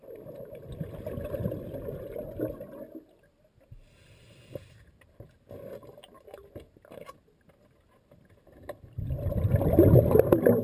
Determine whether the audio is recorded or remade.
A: recorded